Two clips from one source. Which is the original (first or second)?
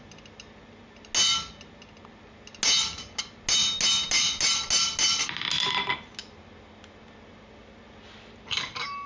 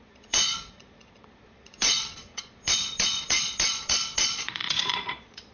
first